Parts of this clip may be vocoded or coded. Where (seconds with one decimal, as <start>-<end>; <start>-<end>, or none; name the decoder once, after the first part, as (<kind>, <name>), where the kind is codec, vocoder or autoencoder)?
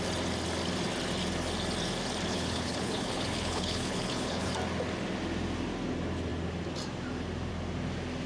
2.3-4.5 (codec, HILCodec)